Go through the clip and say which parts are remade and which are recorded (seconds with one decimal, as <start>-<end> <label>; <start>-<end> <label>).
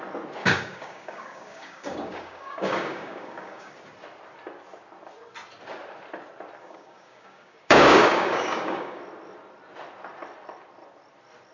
0.0-0.4 recorded; 0.4-3.7 remade; 3.7-6.6 recorded; 6.6-9.0 remade; 9.0-11.5 recorded